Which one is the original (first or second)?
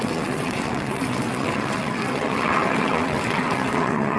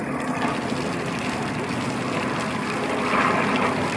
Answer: second